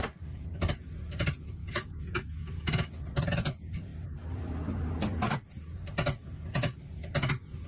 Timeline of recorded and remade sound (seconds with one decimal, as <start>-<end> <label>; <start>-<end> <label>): 0.0-1.6 recorded; 1.6-2.9 remade; 2.9-7.7 recorded